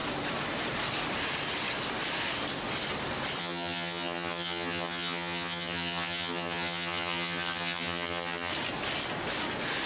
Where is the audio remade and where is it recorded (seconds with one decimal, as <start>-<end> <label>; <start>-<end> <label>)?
0.0-3.4 recorded; 3.4-8.5 remade; 8.5-9.9 recorded